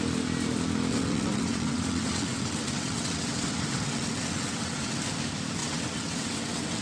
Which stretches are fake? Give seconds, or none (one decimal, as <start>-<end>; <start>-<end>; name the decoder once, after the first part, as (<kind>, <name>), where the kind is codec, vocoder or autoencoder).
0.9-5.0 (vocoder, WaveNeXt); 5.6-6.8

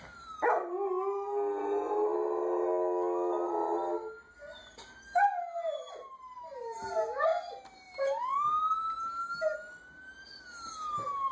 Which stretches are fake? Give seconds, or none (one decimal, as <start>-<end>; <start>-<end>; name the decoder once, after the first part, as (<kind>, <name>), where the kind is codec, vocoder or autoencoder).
none

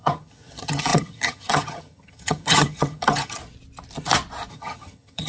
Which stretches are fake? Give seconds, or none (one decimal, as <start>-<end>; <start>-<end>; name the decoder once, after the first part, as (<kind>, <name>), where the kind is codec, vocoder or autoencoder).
0.0-3.4 (vocoder, HiFi-GAN); 4.5-5.3

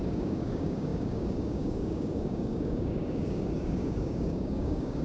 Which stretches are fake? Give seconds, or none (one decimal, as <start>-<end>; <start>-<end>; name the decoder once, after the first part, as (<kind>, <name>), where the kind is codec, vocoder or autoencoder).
0.0-5.0 (codec, DAC)